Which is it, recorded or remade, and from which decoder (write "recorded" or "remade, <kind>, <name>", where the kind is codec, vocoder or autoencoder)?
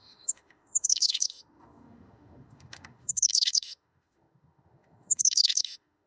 remade, autoencoder, DAC-VAE